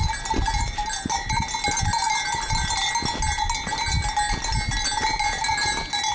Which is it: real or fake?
real